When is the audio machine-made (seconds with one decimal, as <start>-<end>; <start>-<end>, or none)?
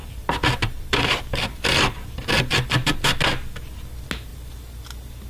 0.0-3.0